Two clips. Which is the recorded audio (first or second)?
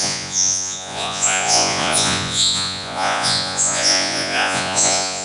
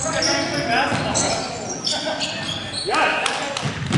second